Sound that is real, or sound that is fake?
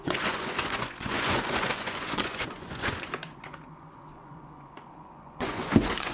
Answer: fake